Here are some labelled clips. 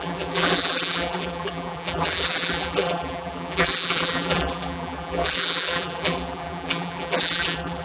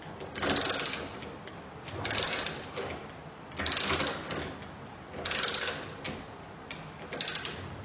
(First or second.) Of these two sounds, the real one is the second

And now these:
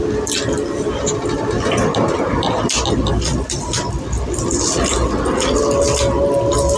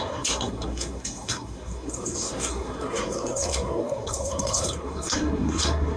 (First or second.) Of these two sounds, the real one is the first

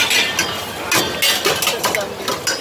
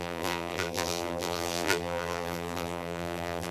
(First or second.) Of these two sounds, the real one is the first